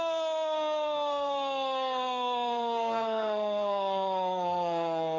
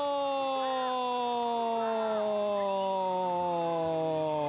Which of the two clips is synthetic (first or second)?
first